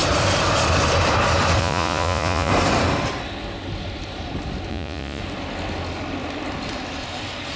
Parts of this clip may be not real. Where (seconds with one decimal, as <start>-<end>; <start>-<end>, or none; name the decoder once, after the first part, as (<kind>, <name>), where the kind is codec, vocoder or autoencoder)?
1.6-2.5 (vocoder, Vocos); 4.7-5.2